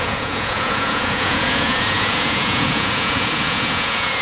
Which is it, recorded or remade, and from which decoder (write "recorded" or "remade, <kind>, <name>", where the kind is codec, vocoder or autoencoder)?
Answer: remade, vocoder, Vocos